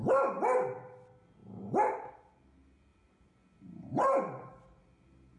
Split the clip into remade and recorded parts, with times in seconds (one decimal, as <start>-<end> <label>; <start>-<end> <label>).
0.0-2.9 recorded; 2.9-4.8 remade; 4.8-5.4 recorded